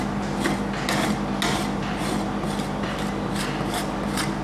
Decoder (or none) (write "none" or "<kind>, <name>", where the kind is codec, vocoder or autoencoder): none